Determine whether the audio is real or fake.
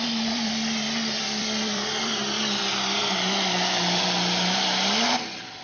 fake